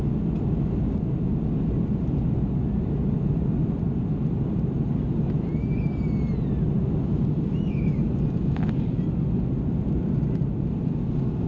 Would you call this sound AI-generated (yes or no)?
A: no